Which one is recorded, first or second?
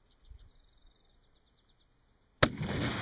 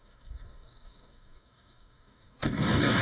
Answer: first